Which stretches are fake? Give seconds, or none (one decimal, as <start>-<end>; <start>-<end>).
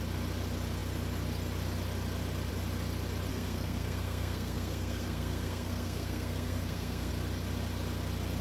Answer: 3.3-7.1